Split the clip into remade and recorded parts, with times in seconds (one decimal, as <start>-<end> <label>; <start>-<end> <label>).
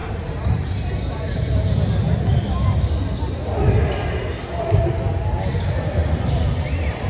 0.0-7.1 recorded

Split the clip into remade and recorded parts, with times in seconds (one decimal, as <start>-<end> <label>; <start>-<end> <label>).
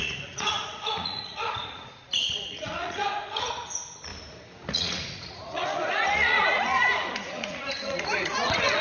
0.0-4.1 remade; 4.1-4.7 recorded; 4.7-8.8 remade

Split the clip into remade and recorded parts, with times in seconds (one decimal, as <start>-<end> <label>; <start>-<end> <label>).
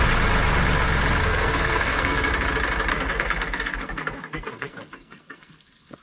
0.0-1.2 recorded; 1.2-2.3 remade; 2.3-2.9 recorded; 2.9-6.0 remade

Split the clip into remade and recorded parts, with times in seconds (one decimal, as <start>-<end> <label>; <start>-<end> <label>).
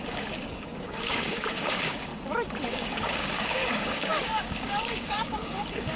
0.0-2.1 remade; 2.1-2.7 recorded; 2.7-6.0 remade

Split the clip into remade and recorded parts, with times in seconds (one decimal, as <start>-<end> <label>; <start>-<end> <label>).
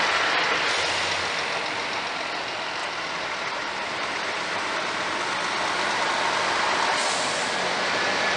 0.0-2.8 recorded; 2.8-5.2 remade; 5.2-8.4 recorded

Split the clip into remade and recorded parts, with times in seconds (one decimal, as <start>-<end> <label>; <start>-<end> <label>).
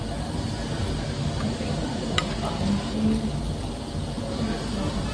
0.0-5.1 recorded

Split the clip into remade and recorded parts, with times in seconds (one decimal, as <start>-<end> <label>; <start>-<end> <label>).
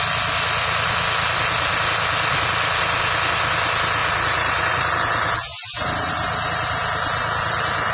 0.0-4.0 recorded; 4.0-4.9 remade; 4.9-7.9 recorded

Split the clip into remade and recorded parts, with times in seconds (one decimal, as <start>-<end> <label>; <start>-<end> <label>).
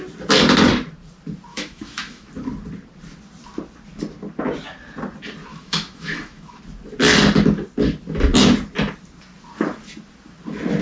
0.0-1.5 recorded; 1.5-2.3 remade; 2.3-5.5 recorded; 5.5-6.6 remade; 6.6-10.8 recorded